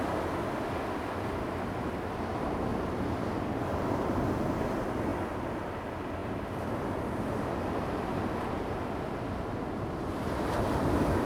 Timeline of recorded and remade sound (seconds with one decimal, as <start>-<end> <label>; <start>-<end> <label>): 0.0-2.7 recorded; 2.7-3.3 remade; 3.3-5.1 recorded; 5.1-5.7 remade; 5.7-11.3 recorded